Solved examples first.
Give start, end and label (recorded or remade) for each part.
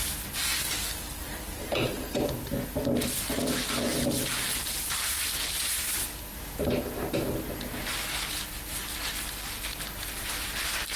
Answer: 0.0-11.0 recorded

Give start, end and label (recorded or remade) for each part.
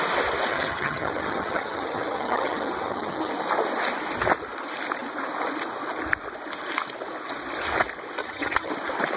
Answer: 0.0-0.5 recorded; 0.5-3.3 remade; 3.3-8.2 recorded; 8.2-8.7 remade; 8.7-9.2 recorded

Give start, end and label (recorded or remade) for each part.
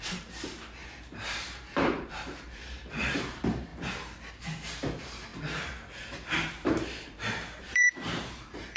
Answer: 0.0-3.7 remade; 3.7-4.3 recorded; 4.3-8.8 remade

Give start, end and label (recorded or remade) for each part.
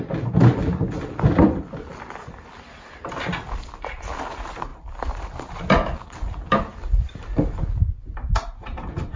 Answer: 0.0-9.2 recorded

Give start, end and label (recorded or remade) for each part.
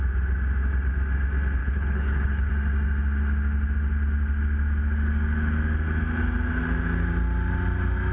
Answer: 0.0-1.6 recorded; 1.6-2.5 remade; 2.5-8.1 recorded